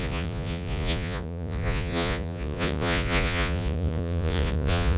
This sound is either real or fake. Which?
fake